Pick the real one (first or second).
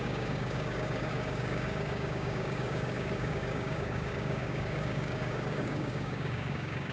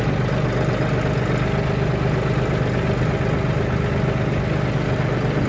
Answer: second